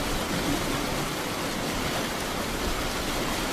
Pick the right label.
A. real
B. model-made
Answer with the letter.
A